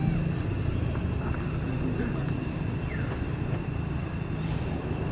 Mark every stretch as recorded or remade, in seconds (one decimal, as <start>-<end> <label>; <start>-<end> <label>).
0.0-2.2 recorded; 2.2-5.1 remade